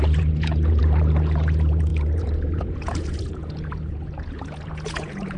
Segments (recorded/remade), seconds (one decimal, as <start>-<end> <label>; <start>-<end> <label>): 0.0-5.4 remade